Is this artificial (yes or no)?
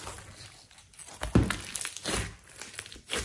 no